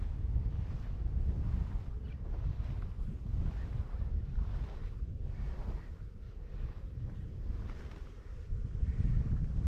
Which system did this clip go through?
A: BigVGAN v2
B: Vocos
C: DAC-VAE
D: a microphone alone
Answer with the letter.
D